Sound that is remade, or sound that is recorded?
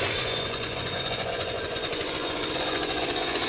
remade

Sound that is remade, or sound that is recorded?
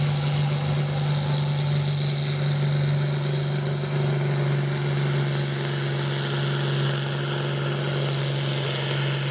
recorded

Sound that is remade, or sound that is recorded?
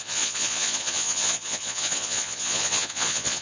remade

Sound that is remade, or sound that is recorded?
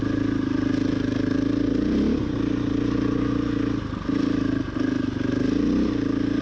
recorded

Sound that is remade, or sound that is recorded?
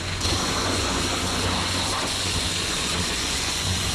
remade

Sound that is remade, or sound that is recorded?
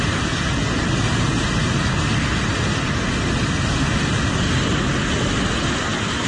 recorded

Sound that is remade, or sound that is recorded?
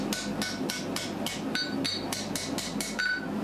recorded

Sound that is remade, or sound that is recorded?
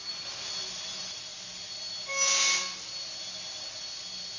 recorded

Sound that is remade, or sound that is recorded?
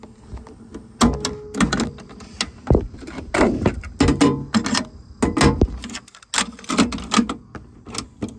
recorded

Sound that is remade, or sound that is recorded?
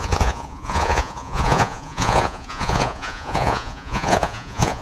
remade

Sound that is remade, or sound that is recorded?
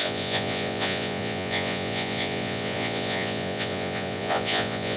remade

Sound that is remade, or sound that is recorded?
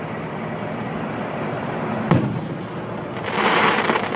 recorded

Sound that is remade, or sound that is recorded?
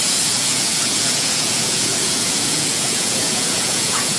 remade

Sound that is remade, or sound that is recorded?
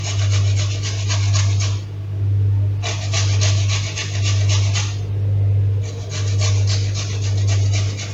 recorded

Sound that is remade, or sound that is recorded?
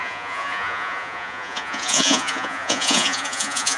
remade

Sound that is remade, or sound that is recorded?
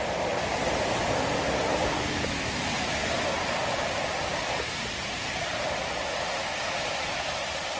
recorded